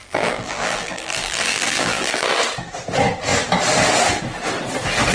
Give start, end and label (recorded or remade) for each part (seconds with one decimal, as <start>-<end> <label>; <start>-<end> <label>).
0.0-2.4 remade; 2.4-5.1 recorded

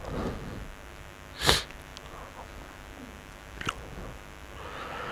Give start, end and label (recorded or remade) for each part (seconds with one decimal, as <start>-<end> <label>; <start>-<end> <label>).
0.0-5.1 recorded

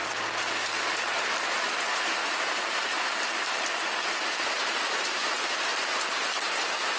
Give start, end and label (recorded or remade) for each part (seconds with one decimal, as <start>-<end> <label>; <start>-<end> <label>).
0.0-0.8 recorded; 0.8-2.2 remade; 2.2-4.3 recorded; 4.3-7.0 remade

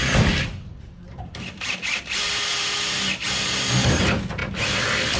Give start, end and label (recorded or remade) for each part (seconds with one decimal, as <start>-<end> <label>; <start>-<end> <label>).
0.0-2.5 remade; 2.5-5.2 recorded

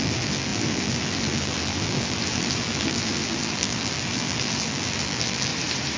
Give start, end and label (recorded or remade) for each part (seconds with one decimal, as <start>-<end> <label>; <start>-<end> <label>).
0.0-5.5 remade; 5.5-6.0 recorded